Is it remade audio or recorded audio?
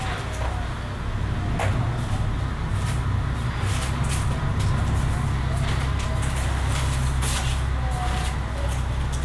recorded